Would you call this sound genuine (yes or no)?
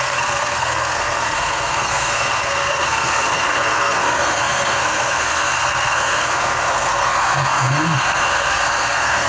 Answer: no